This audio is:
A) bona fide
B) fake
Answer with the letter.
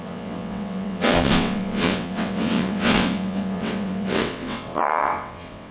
B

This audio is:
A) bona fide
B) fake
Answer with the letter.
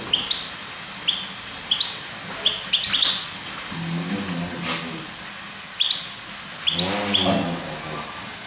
A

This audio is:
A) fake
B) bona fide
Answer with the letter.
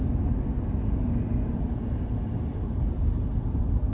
B